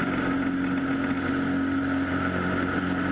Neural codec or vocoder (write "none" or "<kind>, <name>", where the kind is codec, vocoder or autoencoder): none